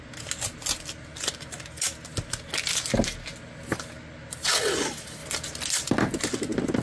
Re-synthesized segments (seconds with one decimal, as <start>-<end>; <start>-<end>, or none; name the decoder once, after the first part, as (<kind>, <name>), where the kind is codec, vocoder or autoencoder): none

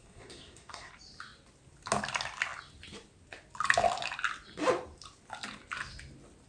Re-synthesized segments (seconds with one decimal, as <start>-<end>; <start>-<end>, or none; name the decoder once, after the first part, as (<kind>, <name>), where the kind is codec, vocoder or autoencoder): 0.0-0.9 (codec, SNAC)

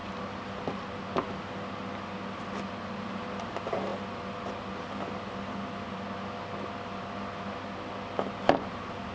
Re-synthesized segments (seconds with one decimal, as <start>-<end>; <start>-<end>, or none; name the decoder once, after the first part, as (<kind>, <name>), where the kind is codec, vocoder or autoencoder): none

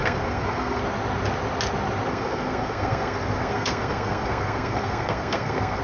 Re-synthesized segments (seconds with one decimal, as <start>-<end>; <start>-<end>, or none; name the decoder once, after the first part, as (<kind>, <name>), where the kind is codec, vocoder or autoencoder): 0.0-0.8 (codec, SNAC); 2.1-5.8

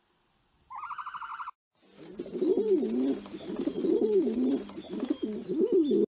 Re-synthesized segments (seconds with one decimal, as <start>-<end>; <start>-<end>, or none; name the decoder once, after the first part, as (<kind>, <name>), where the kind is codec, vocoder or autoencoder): 3.7-4.5 (vocoder, Vocos)

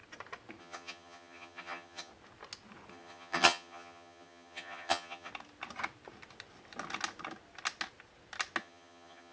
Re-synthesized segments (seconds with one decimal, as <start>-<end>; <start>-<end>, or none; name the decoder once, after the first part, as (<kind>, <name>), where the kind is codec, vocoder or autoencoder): 0.6-2.1 (vocoder, HiFi-GAN); 2.9-5.3; 8.6-9.3

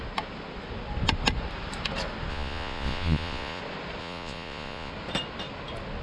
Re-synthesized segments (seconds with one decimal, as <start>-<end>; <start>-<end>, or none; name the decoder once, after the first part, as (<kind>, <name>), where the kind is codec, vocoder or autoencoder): 2.3-3.6 (vocoder, Vocos); 4.0-4.9